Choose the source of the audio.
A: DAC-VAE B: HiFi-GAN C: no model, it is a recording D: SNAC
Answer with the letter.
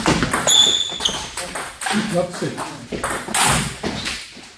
C